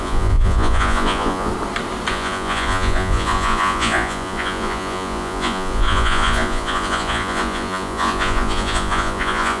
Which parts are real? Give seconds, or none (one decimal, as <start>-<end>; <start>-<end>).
1.5-2.1